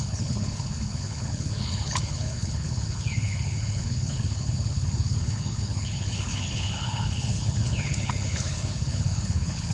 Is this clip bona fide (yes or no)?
no